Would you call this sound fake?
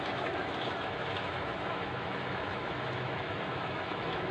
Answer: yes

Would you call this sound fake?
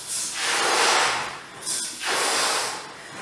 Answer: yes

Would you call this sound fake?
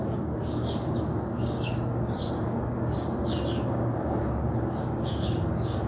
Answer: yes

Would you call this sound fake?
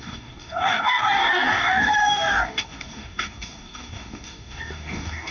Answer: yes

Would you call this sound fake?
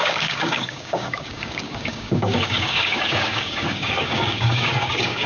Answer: yes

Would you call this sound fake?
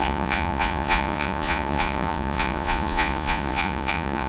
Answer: yes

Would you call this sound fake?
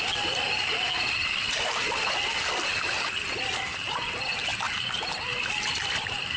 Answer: no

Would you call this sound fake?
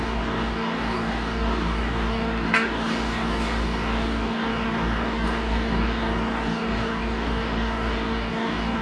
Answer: yes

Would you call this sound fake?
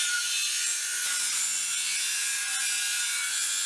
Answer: yes